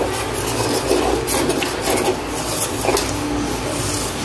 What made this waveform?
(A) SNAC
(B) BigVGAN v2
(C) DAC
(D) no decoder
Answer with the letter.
D